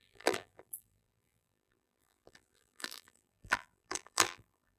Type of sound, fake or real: fake